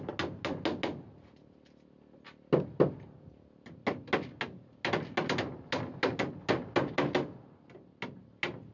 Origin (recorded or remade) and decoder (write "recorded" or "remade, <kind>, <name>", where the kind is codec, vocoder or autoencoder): recorded